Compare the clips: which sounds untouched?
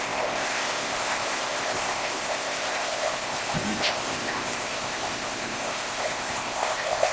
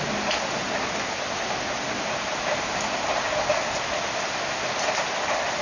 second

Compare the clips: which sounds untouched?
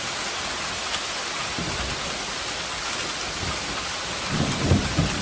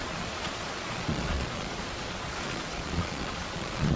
first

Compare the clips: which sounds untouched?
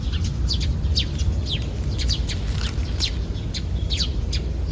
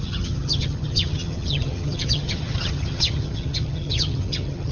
first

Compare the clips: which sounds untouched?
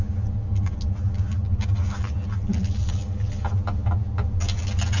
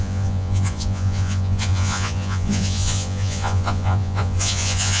first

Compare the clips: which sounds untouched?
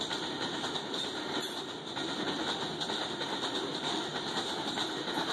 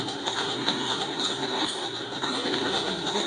first